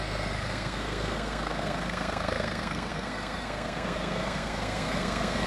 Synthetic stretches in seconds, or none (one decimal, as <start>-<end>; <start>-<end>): 0.0-5.5